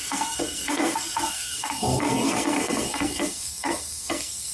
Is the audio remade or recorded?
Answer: remade